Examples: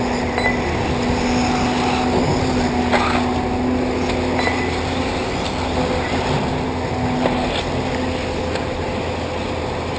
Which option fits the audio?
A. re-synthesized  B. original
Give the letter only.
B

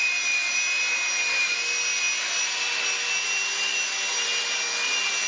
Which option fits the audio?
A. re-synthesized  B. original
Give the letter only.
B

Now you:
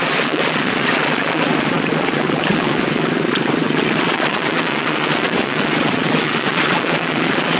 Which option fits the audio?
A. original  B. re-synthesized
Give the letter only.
B